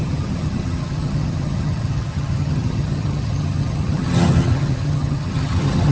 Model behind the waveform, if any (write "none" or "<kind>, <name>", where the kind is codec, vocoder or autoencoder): vocoder, HiFi-GAN